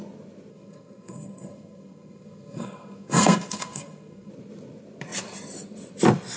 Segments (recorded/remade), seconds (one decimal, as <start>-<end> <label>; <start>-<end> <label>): 0.0-0.5 recorded; 0.5-4.3 remade; 4.3-6.4 recorded